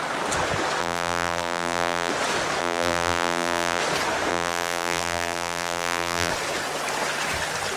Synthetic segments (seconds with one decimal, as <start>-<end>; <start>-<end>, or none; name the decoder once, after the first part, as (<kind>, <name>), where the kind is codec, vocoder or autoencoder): 0.8-2.1 (vocoder, BigVGAN v2); 2.6-3.8; 4.3-6.3